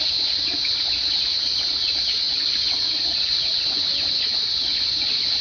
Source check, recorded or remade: recorded